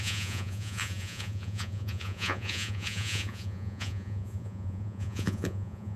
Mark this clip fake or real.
fake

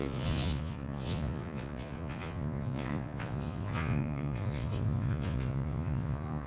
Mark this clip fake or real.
fake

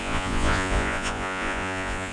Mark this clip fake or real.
fake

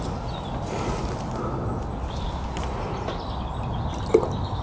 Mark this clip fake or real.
real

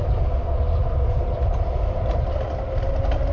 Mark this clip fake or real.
real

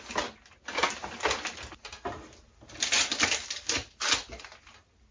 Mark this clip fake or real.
real